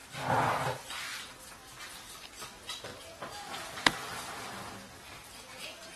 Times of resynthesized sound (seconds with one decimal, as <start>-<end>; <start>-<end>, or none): 0.0-0.5; 2.9-5.6